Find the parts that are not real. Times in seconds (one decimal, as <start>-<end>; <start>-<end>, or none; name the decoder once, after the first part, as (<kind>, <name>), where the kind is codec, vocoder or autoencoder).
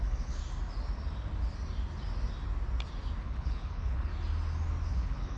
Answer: 0.0-0.4 (codec, HILCodec); 3.2-4.1; 4.9-5.4